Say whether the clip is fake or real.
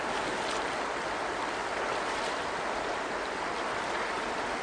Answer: real